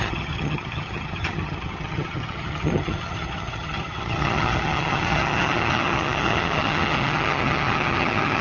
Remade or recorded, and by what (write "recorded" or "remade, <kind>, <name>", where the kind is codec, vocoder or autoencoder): remade, vocoder, HiFi-GAN